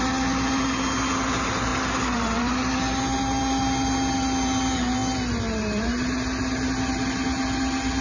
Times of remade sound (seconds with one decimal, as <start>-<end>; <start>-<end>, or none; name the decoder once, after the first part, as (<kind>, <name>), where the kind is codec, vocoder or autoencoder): none